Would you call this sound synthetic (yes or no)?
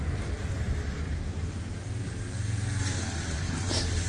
yes